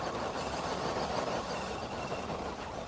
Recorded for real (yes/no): no